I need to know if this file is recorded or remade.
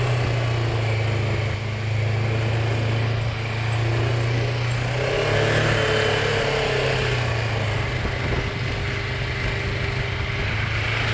recorded